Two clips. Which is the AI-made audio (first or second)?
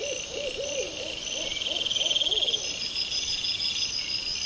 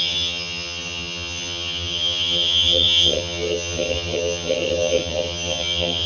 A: second